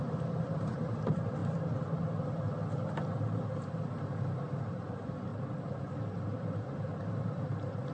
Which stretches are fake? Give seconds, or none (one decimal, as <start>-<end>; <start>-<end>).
0.0-1.4; 3.6-5.3; 6.0-7.9